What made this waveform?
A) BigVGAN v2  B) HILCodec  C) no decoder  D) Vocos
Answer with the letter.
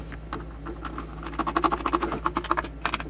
C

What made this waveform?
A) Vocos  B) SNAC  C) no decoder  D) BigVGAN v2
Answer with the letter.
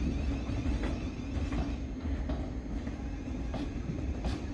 C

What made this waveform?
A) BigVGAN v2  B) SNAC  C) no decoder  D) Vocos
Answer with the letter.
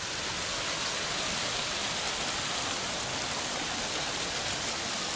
C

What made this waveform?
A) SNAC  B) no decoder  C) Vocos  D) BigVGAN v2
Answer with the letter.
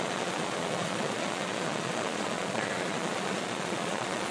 C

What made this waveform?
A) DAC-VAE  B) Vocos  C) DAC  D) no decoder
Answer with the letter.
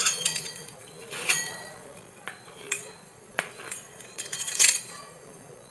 B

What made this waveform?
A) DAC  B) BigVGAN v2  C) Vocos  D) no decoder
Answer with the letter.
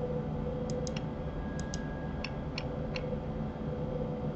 D